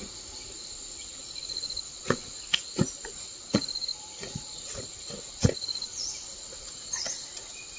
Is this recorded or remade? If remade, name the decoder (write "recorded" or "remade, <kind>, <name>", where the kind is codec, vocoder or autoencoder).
remade, vocoder, Vocos